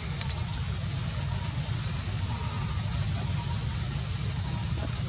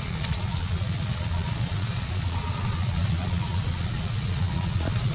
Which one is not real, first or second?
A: second